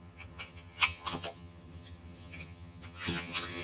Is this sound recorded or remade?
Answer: remade